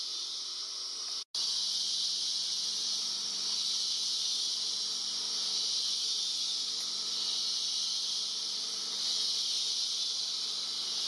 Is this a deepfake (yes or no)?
no